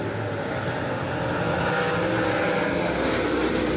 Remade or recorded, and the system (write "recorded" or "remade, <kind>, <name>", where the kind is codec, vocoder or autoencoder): recorded